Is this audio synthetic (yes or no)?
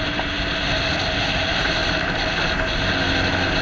no